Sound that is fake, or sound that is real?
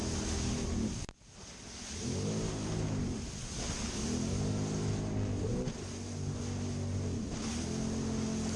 real